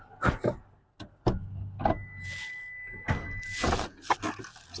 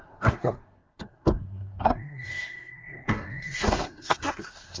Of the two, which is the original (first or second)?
first